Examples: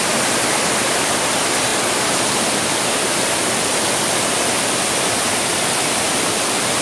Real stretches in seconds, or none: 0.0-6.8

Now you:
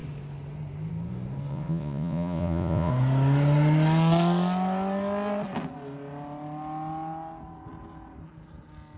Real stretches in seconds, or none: 0.0-1.5; 2.9-9.0